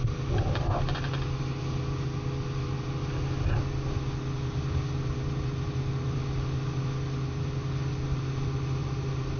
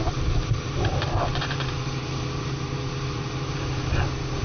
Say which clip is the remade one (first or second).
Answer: second